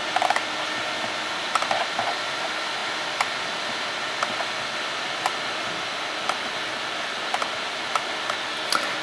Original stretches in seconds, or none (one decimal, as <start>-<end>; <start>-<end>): 0.0-9.0